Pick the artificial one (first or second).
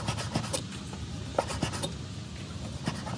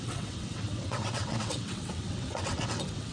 second